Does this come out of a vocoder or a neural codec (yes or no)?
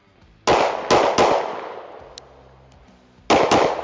no